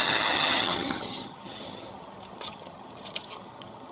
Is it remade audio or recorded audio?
remade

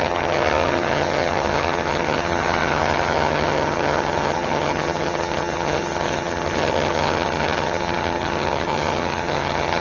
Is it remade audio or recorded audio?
remade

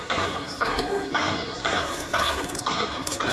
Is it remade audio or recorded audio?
remade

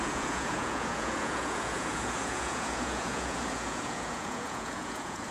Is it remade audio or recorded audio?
remade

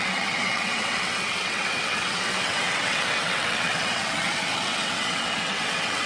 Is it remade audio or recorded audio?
remade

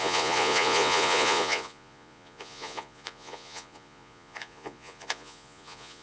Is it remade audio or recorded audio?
remade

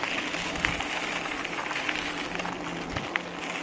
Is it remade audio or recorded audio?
recorded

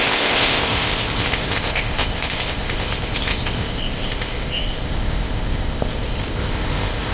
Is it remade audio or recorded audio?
remade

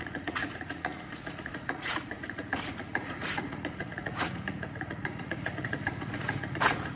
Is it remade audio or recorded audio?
remade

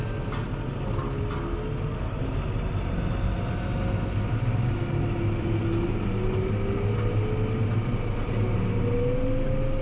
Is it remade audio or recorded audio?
recorded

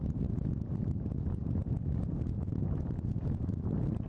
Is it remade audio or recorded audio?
recorded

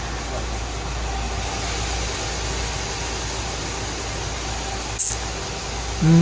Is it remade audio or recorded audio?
recorded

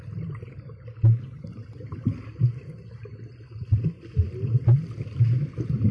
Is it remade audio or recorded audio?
recorded